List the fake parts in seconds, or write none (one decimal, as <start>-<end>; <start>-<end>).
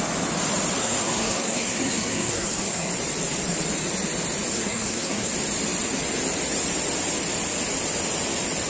0.8-2.9; 4.5-5.3